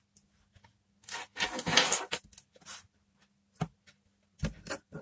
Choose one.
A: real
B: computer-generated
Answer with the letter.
A